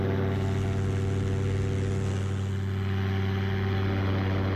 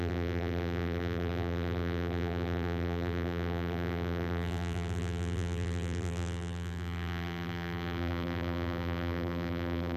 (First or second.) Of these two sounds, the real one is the first